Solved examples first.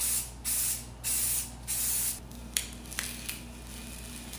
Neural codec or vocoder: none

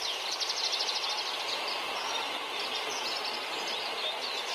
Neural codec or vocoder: none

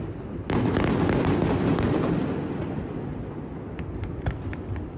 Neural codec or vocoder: none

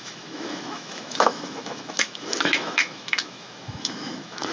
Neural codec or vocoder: autoencoder, DAC-VAE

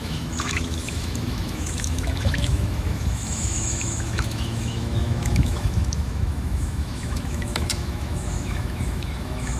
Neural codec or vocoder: autoencoder, DAC-VAE